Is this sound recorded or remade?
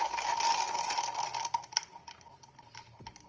recorded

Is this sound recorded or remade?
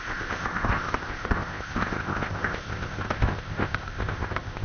remade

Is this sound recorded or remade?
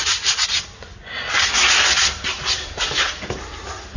recorded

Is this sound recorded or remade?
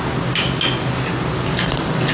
recorded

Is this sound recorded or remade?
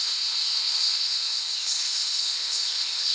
remade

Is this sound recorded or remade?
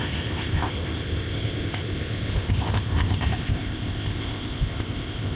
remade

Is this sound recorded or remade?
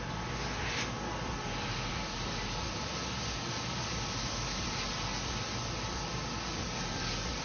recorded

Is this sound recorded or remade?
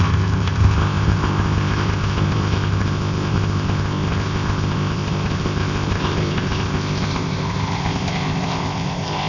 remade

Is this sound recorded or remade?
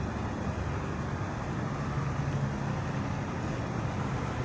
recorded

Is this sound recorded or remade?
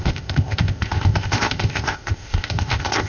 remade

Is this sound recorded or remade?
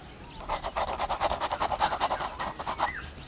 recorded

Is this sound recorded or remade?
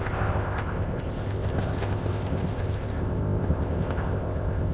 remade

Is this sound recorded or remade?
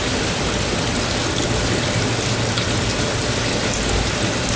recorded